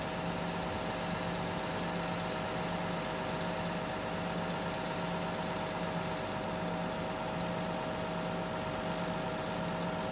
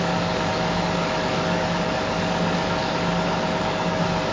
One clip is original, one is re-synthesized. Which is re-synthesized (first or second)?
second